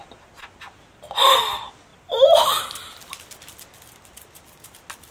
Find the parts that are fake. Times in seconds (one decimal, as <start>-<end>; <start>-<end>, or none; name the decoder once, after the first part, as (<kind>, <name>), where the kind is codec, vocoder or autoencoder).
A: none